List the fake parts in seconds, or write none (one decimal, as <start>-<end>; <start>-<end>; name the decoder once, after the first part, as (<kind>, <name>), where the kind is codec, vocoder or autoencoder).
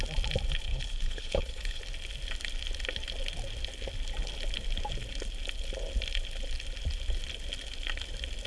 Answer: 0.7-1.8 (codec, HILCodec)